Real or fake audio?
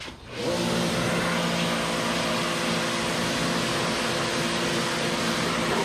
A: real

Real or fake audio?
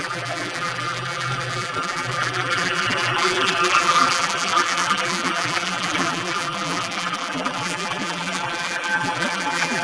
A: fake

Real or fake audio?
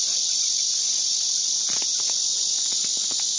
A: fake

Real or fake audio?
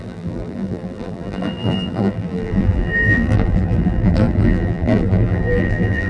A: fake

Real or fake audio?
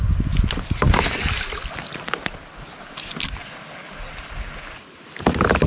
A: real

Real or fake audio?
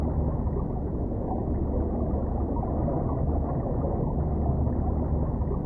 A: real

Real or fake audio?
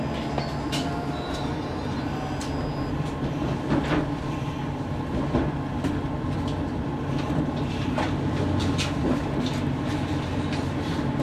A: real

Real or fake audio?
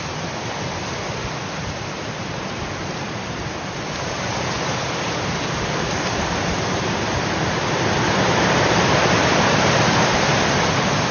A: fake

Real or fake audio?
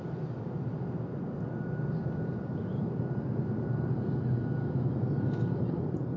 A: real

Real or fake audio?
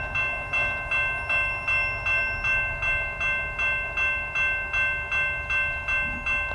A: real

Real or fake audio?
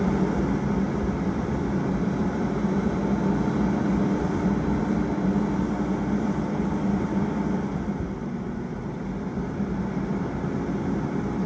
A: real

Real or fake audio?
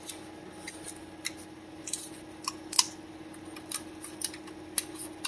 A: real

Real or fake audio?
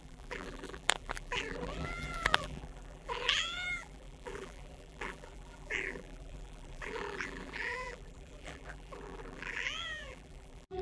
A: fake